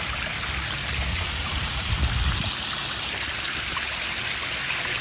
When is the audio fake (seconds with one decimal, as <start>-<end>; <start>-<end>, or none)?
1.1-1.9